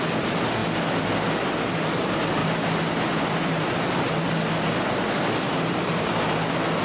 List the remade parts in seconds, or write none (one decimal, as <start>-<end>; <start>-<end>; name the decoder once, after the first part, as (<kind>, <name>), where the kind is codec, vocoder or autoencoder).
2.4-4.3 (vocoder, BigVGAN v2); 5.5-6.3